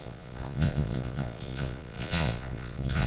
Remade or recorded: remade